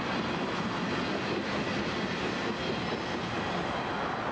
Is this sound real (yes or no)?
yes